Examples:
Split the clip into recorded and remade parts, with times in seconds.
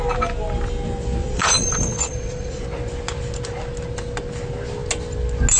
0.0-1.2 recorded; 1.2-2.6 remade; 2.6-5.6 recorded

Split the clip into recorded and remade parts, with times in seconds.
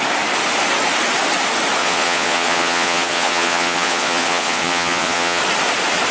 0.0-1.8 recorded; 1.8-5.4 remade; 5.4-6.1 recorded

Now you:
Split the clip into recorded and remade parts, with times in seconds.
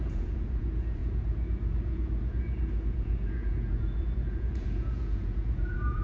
0.0-6.0 remade